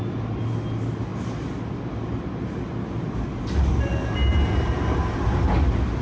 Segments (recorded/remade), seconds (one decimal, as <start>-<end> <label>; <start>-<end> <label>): 0.0-6.0 recorded